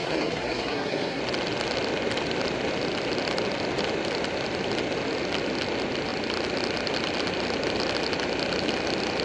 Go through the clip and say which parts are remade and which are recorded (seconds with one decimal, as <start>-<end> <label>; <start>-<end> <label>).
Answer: 0.0-1.2 remade; 1.2-9.2 recorded